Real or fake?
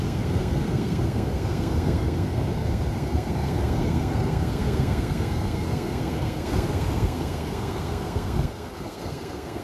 fake